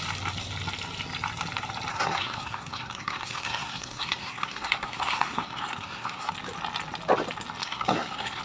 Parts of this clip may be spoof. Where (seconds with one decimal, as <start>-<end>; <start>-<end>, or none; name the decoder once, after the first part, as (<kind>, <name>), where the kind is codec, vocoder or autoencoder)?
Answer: 1.9-6.3 (codec, SNAC); 7.6-8.4